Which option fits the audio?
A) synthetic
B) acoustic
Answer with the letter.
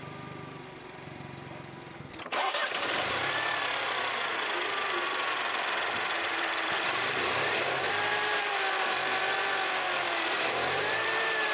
A